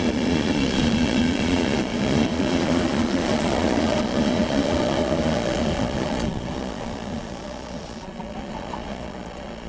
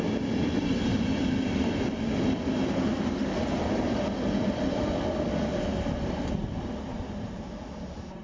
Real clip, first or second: second